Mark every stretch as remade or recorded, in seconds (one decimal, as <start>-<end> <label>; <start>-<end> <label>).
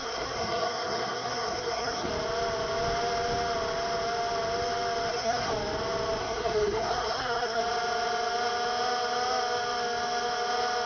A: 0.0-2.1 remade; 2.1-5.1 recorded; 5.1-5.5 remade; 5.5-6.2 recorded; 6.2-7.6 remade; 7.6-10.9 recorded